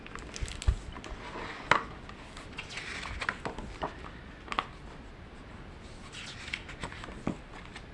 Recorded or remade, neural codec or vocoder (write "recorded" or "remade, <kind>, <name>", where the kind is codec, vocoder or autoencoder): recorded